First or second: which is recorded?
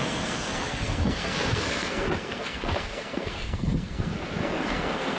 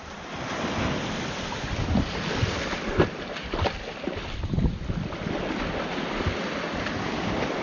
second